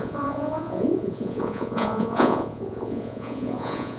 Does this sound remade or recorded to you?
remade